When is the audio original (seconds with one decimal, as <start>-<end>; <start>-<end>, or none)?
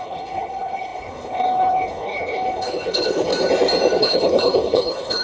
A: 3.3-4.0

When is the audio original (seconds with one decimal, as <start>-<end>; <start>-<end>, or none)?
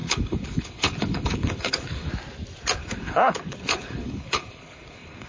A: 2.1-2.8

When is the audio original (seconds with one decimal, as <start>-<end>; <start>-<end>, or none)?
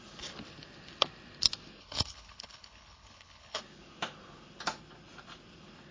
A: 0.0-1.8; 3.6-5.9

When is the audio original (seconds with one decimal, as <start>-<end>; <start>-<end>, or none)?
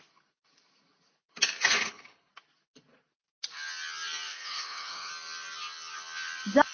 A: 0.0-1.6; 2.3-4.3; 5.1-6.7